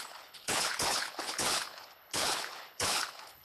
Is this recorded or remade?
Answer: remade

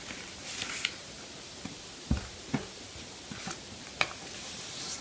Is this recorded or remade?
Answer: recorded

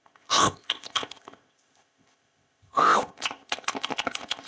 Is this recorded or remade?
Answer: remade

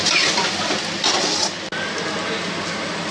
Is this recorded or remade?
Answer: recorded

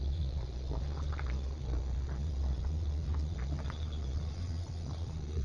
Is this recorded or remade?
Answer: remade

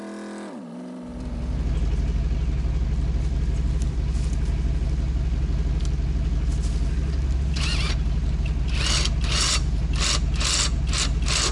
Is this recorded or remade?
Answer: recorded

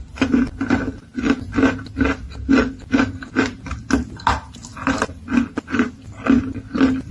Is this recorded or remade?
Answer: recorded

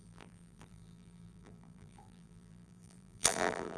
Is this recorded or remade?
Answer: remade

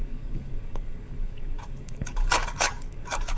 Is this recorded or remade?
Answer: remade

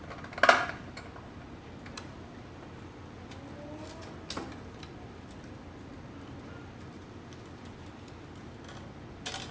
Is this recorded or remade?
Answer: recorded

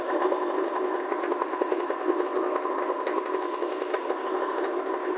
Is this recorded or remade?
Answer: remade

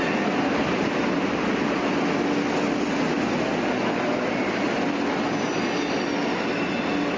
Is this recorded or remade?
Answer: recorded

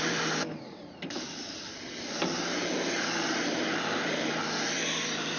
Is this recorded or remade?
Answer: remade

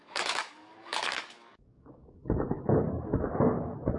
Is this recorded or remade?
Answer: remade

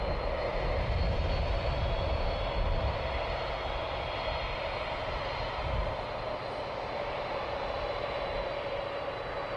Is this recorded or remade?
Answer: recorded